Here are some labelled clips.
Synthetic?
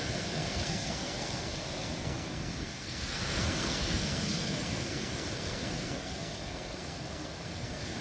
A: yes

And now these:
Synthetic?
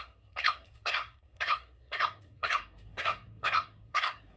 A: yes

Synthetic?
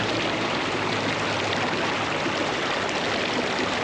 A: no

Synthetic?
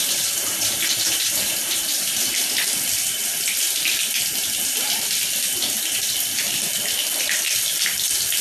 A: no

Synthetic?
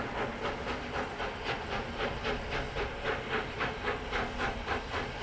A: no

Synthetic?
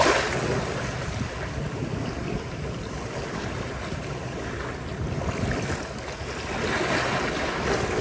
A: no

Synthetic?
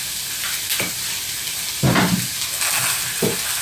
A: no